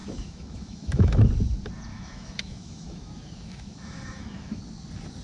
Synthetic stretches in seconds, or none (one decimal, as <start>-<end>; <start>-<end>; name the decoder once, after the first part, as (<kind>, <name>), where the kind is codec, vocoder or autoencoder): 0.0-1.3 (autoencoder, DAC-VAE); 1.9-4.6